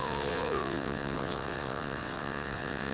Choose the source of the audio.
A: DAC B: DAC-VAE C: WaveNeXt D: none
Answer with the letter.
C